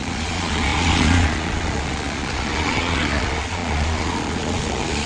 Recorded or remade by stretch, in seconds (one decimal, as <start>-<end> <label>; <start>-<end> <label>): 0.0-5.1 remade